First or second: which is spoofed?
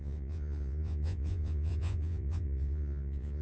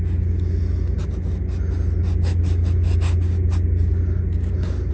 first